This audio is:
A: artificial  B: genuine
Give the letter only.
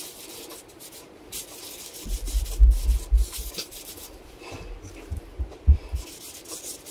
B